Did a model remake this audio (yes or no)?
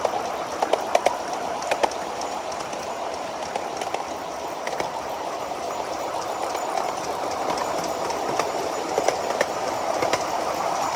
no